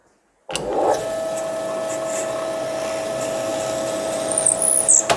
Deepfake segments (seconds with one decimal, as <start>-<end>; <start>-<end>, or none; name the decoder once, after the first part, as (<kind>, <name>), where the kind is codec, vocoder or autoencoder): none